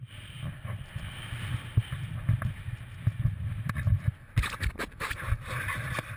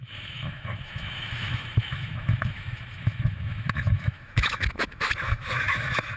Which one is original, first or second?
first